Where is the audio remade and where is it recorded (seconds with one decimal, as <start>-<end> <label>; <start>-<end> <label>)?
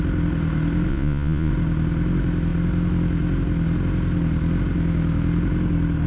0.0-0.9 recorded; 0.9-1.5 remade; 1.5-6.1 recorded